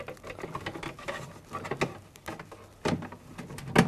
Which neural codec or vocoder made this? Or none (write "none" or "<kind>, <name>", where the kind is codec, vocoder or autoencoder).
none